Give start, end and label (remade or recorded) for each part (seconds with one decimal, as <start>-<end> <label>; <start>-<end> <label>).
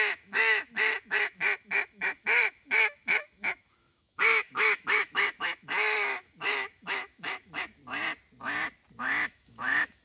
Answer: 0.0-7.8 remade; 7.8-9.0 recorded; 9.0-10.0 remade